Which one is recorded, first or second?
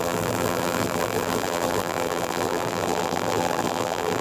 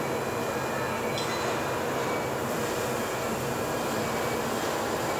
second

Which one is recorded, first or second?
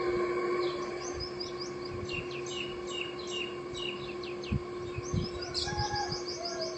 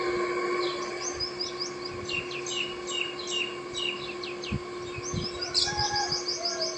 second